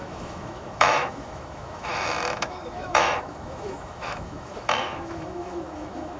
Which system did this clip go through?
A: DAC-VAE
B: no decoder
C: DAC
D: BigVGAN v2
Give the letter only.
A